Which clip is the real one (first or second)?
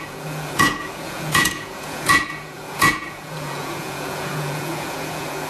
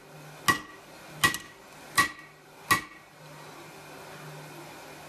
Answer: second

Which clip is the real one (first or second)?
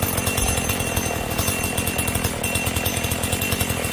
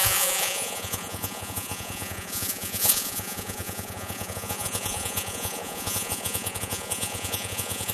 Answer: first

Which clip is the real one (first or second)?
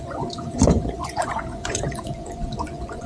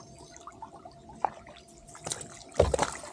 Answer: second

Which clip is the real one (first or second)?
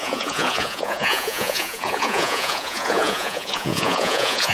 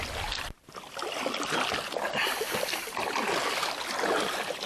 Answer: second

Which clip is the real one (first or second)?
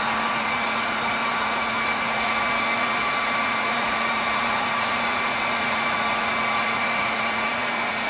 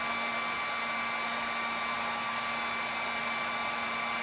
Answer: second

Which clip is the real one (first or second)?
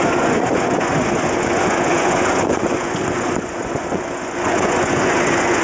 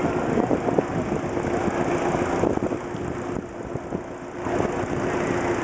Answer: second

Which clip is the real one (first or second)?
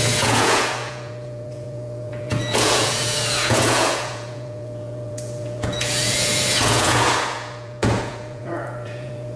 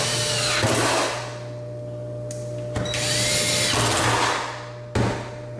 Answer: second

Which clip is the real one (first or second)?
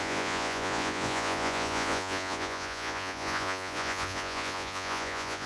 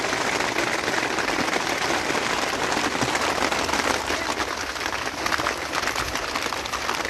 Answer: second